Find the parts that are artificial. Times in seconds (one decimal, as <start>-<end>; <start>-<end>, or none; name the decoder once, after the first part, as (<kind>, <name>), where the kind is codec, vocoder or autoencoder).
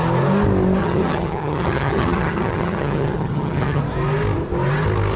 0.8-3.8 (vocoder, HiFi-GAN)